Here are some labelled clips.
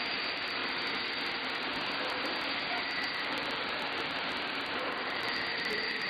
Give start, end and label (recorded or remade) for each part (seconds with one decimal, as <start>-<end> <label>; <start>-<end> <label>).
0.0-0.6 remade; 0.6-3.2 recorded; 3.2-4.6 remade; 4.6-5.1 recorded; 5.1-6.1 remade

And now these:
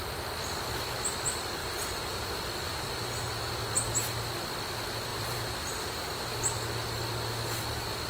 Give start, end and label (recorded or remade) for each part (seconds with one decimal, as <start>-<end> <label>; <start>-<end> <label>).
0.0-1.6 recorded; 1.6-2.3 remade; 2.3-2.7 recorded; 2.7-3.4 remade; 3.4-5.1 recorded; 5.1-6.3 remade; 6.3-8.1 recorded

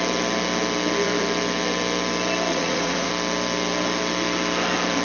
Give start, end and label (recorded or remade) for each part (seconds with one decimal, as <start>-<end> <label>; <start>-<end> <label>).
0.0-2.5 recorded; 2.5-3.1 remade; 3.1-5.0 recorded

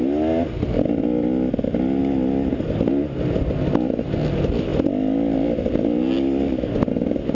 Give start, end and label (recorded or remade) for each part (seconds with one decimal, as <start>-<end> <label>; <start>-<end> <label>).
0.0-7.3 recorded

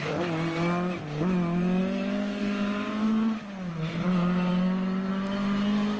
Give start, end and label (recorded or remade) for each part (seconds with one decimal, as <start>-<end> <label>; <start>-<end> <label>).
0.0-6.0 recorded